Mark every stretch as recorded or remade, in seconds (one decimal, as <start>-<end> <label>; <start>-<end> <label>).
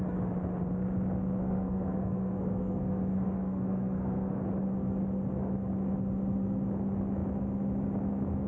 0.0-1.4 recorded; 1.4-4.4 remade; 4.4-8.5 recorded